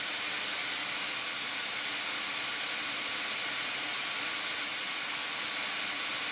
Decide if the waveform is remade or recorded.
recorded